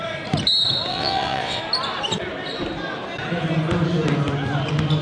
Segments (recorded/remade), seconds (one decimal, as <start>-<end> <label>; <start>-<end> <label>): 0.0-0.9 recorded; 0.9-1.6 remade; 1.6-5.0 recorded